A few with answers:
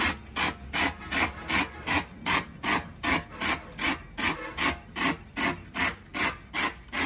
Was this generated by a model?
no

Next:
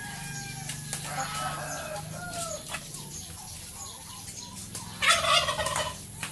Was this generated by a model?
no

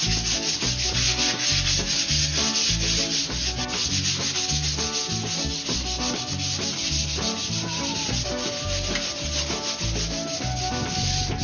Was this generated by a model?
no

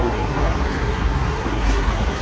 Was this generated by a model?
yes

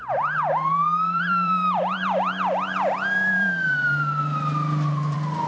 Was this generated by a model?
yes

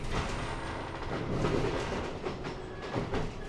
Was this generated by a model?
no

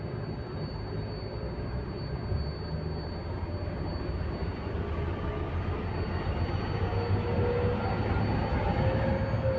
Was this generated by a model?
no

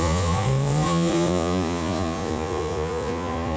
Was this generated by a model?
yes